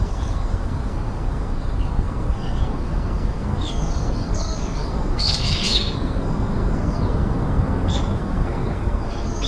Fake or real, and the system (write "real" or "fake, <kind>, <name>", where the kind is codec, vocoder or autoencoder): fake, codec, SNAC